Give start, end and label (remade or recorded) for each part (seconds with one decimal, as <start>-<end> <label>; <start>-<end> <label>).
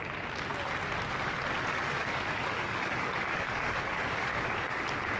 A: 0.0-1.7 recorded; 1.7-4.8 remade; 4.8-5.2 recorded